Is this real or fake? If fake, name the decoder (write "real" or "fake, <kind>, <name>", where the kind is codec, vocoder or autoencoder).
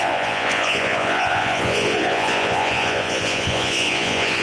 fake, vocoder, Vocos